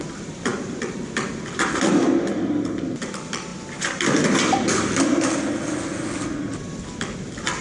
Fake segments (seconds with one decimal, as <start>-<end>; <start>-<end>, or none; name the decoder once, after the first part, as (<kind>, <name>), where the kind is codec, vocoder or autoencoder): 0.0-5.9 (vocoder, BigVGAN v2)